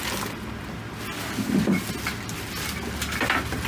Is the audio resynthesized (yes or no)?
no